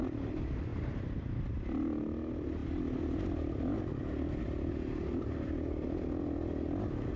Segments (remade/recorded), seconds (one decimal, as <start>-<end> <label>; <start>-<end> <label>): 0.0-7.2 recorded